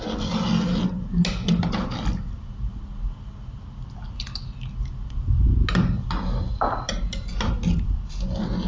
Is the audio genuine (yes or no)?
yes